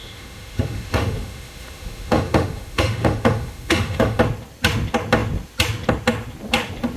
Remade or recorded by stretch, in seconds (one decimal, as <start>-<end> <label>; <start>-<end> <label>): 0.0-4.2 remade; 4.2-7.0 recorded